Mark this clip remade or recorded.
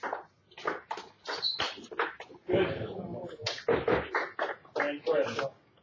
recorded